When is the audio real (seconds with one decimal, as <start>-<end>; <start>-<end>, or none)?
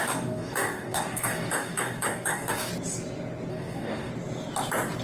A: 2.7-3.5; 4.1-5.0